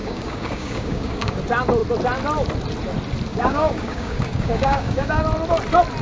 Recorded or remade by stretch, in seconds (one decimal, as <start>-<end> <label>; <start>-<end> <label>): 0.0-1.4 remade; 1.4-3.3 recorded; 3.3-5.2 remade; 5.2-6.0 recorded